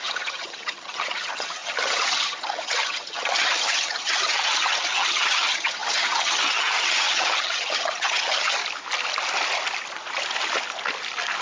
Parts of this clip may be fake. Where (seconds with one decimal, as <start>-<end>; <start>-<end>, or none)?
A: 0.0-8.6

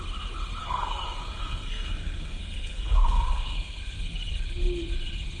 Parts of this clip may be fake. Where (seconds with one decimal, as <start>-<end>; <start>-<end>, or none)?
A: 0.6-3.8